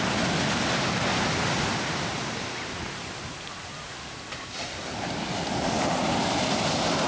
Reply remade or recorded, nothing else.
recorded